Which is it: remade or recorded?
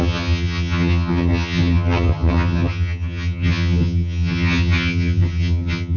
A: remade